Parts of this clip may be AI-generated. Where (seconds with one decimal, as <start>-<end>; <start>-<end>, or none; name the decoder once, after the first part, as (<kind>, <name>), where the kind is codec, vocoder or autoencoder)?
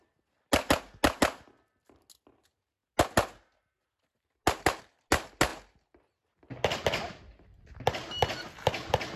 none